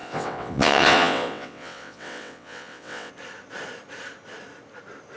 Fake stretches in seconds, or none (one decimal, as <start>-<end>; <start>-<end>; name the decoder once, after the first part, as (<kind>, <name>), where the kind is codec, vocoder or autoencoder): 0.0-3.1 (vocoder, WaveNeXt)